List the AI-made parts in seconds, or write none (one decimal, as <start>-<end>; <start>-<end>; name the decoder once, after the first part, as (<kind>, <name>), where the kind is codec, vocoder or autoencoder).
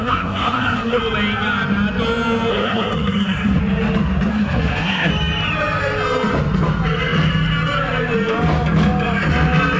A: 0.0-1.0 (codec, SNAC); 2.5-3.6; 4.3-5.1